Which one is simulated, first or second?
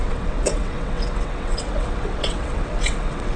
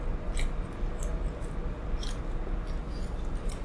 first